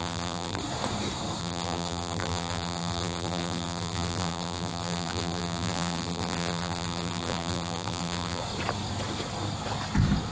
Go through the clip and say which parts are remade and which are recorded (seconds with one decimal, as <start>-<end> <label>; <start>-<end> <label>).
0.0-0.6 remade; 0.6-1.4 recorded; 1.4-8.4 remade; 8.4-10.3 recorded